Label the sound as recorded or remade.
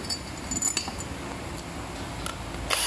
recorded